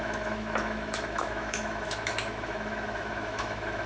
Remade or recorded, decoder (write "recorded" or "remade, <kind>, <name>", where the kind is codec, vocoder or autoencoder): remade, autoencoder, DAC-VAE